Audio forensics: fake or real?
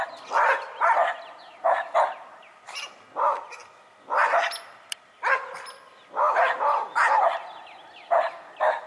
real